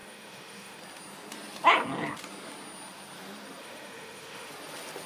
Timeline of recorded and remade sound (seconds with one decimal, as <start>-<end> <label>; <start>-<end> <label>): 0.0-0.8 remade; 0.8-3.6 recorded; 3.6-4.5 remade; 4.5-5.1 recorded